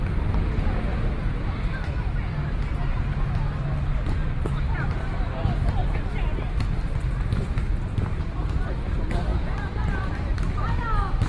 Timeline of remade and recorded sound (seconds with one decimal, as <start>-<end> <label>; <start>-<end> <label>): 0.0-5.8 remade; 5.8-8.6 recorded; 8.6-11.3 remade